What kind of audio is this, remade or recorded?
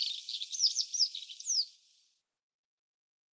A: recorded